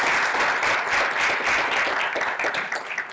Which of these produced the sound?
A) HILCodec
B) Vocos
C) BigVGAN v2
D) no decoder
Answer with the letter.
D